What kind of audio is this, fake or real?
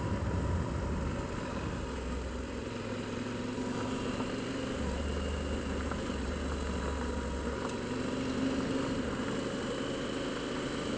real